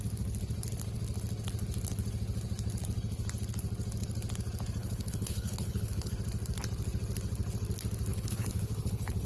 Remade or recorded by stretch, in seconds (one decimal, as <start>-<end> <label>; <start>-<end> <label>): 0.0-4.8 recorded; 4.8-6.1 remade; 6.1-8.1 recorded; 8.1-9.3 remade